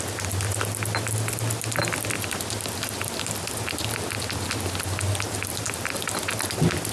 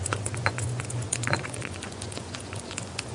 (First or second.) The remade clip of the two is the second